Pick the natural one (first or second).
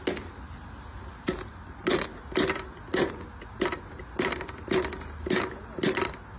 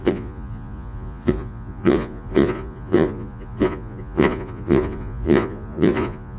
first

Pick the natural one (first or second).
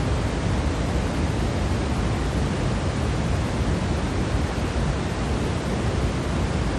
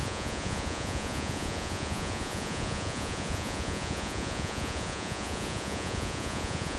first